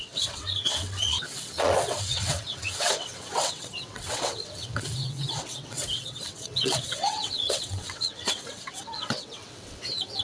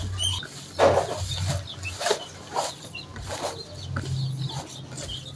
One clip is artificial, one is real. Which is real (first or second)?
second